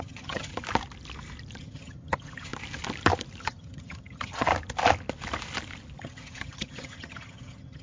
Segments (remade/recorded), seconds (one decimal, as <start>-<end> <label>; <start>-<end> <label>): 0.0-0.5 remade; 0.5-1.6 recorded; 1.6-2.5 remade; 2.5-3.4 recorded; 3.4-4.5 remade; 4.5-6.0 recorded; 6.0-7.8 remade